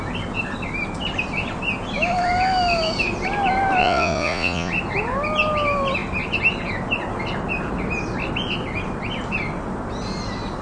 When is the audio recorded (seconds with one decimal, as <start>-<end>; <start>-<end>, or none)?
0.0-3.8; 4.7-10.6